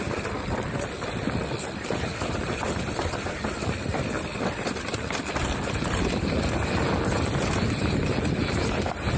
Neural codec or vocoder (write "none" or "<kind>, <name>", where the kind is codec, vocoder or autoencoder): vocoder, BigVGAN v2